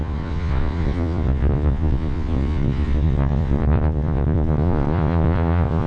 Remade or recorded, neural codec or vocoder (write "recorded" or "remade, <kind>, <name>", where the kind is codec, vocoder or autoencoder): remade, vocoder, Vocos